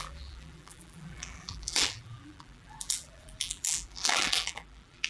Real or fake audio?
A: fake